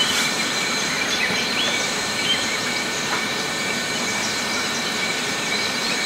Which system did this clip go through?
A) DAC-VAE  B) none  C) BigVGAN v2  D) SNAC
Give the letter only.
C